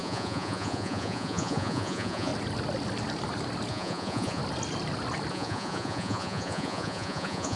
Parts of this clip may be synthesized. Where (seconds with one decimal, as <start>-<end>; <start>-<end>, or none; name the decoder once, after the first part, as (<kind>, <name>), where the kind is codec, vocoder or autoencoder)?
0.0-2.3 (vocoder, Vocos); 3.7-4.4; 5.3-7.6